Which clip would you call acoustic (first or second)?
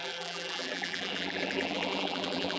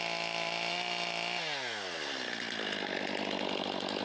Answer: second